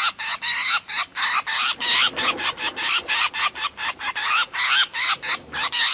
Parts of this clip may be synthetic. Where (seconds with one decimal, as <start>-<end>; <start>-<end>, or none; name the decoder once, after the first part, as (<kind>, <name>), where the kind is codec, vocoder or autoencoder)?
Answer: none